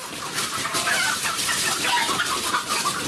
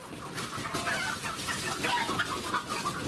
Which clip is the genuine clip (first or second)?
second